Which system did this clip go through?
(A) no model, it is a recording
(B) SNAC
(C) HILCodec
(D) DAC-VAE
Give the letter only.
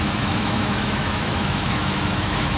D